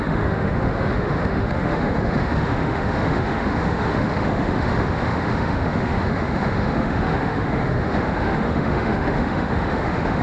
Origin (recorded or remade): remade